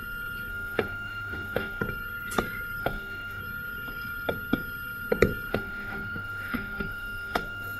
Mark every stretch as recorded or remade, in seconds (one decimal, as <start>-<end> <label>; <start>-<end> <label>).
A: 0.0-0.5 recorded; 0.5-1.8 remade; 1.8-2.8 recorded; 2.8-3.4 remade; 3.4-5.5 recorded; 5.5-7.8 remade